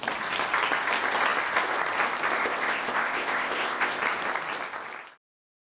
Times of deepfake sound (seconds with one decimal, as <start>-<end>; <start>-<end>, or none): 2.4-4.0